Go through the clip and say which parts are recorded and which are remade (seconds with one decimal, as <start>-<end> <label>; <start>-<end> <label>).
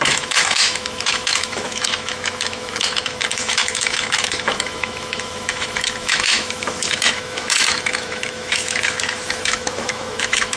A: 0.0-10.6 remade